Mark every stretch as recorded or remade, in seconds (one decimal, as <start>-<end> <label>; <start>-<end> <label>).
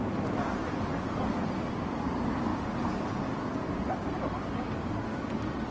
0.0-5.7 recorded